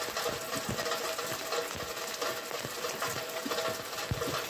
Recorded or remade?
recorded